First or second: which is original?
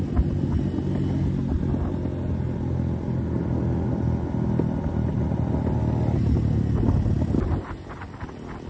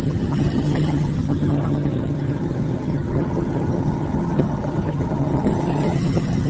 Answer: first